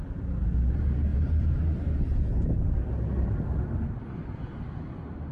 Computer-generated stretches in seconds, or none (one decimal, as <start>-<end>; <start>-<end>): none